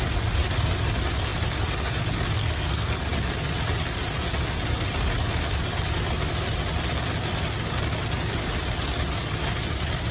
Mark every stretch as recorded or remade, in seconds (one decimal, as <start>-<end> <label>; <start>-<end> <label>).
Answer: 0.0-2.4 recorded; 2.4-3.0 remade; 3.0-10.1 recorded